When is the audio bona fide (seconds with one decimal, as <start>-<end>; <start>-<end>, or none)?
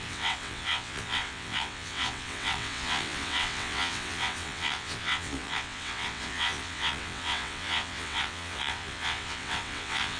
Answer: none